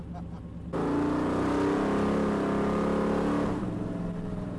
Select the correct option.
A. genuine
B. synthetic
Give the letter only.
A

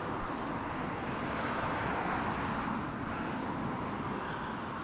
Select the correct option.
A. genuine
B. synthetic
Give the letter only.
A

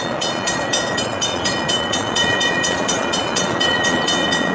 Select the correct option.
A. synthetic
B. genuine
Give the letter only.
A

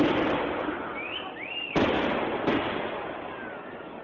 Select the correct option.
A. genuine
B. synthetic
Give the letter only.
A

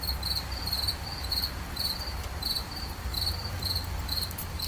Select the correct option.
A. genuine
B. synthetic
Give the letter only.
B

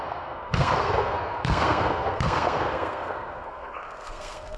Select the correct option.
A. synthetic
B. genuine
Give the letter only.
A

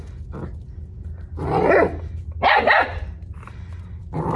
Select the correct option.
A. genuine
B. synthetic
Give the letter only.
A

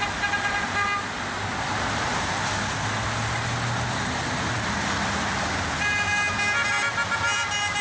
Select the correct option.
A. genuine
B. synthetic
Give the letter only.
A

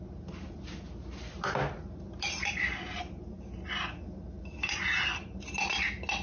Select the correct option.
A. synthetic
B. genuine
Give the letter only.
B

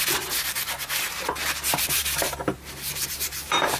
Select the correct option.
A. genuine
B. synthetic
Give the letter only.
B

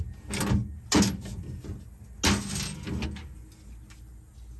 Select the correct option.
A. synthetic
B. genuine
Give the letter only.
B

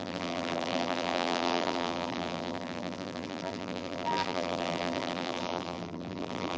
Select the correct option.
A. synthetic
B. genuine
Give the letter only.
A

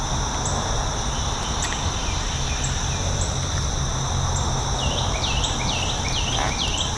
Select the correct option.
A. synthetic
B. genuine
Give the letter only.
B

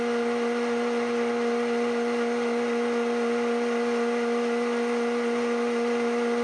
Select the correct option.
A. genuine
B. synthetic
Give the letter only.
A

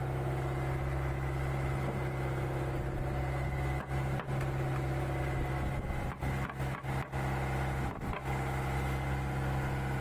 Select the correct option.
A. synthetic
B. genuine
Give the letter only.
B